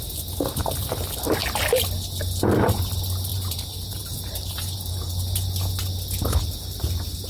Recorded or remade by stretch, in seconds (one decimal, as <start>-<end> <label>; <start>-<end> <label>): 0.0-3.3 recorded; 3.3-5.2 remade; 5.2-7.3 recorded